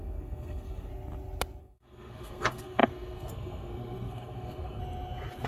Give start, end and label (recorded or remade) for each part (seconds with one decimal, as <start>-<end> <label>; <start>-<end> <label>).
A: 0.0-0.9 remade; 0.9-1.6 recorded; 1.6-4.8 remade; 4.8-5.5 recorded